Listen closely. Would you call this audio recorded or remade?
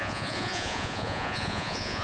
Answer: remade